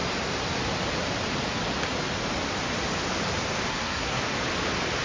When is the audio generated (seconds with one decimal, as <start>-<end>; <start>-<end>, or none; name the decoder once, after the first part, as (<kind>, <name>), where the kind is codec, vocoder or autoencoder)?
3.7-4.2 (codec, SNAC)